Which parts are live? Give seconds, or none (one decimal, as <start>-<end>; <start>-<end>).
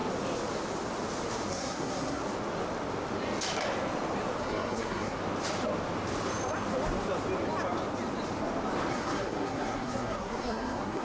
0.0-1.5; 2.2-4.4; 5.2-8.9